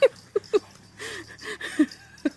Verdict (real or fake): real